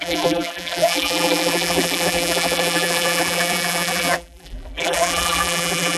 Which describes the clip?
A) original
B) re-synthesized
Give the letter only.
B